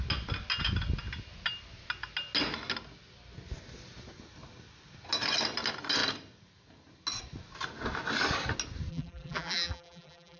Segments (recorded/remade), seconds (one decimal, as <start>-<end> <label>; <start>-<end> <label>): 0.0-8.9 recorded; 8.9-10.4 remade